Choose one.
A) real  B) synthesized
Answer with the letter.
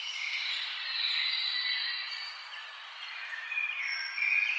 A